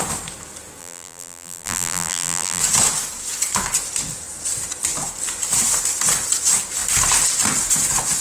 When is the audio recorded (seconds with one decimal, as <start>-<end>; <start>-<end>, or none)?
0.0-0.8; 2.6-8.2